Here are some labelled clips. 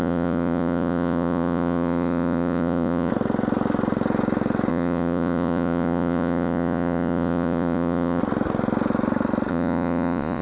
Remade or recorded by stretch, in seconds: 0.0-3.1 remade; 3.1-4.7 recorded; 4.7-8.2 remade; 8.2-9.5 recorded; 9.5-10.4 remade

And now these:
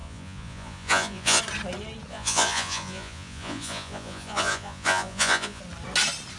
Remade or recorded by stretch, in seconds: 0.0-1.4 remade; 1.4-2.1 recorded; 2.1-5.6 remade; 5.6-6.4 recorded

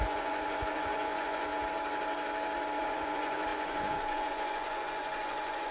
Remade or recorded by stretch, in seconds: 0.0-1.5 remade; 1.5-2.8 recorded; 2.8-5.7 remade

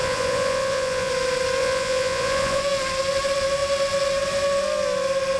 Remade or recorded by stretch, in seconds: 0.0-1.1 remade; 1.1-1.6 recorded; 1.6-2.6 remade; 2.6-5.4 recorded

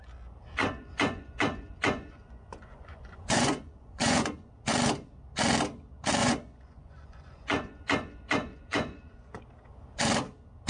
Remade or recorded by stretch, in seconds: 0.0-0.6 recorded; 0.6-4.5 remade; 4.5-6.2 recorded; 6.2-9.3 remade; 9.3-10.7 recorded